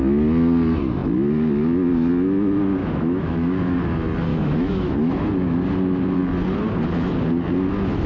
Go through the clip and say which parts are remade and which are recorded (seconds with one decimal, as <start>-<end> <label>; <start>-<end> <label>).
0.0-2.8 recorded; 2.8-3.8 remade; 3.8-4.3 recorded; 4.3-5.1 remade; 5.1-8.1 recorded